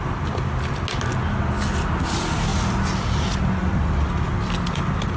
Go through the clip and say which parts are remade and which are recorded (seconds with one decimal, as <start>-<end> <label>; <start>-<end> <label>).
0.0-5.2 recorded